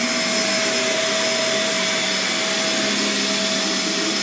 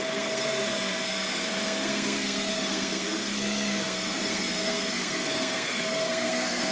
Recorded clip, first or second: first